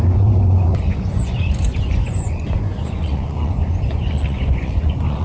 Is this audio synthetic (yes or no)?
yes